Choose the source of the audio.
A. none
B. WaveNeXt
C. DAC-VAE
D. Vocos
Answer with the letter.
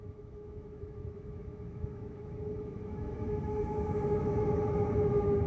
C